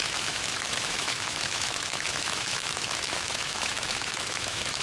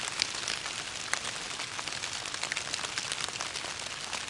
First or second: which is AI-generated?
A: first